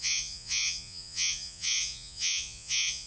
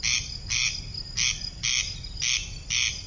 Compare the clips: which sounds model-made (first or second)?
first